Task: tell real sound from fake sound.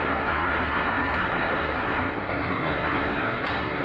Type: fake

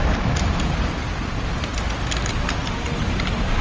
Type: real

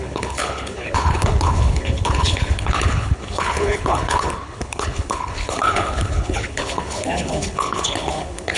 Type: fake